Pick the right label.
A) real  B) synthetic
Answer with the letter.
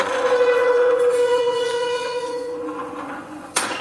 B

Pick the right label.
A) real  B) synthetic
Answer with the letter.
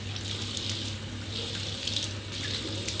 A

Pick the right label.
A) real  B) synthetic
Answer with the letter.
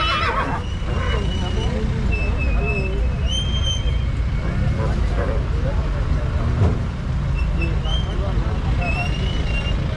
A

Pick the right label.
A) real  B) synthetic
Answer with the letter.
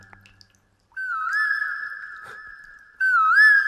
A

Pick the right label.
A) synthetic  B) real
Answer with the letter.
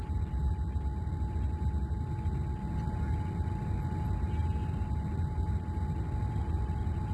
B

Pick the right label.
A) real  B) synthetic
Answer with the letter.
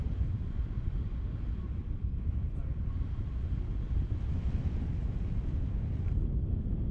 A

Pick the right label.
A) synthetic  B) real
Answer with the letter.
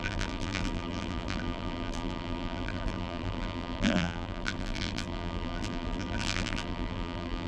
A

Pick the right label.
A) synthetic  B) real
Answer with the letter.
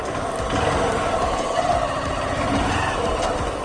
B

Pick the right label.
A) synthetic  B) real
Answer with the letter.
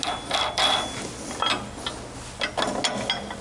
B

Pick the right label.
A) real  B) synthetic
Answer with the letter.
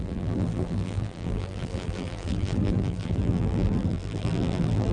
B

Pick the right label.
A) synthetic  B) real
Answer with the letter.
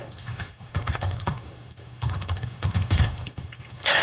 A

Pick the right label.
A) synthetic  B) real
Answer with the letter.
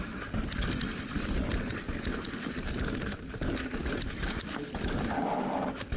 B